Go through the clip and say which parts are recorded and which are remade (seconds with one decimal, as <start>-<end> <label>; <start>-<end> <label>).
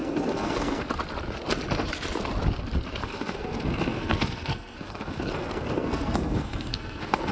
0.0-0.8 remade; 0.8-3.0 recorded; 3.0-7.3 remade